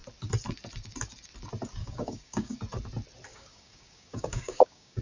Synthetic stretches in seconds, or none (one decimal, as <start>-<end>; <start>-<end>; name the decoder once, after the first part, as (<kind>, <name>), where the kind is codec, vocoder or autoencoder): 1.8-2.6 (codec, DAC); 3.3-5.0